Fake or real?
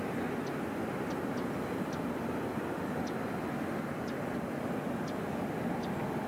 real